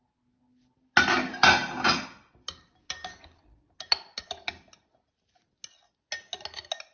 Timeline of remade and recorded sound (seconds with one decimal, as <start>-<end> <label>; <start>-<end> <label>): 0.0-6.9 recorded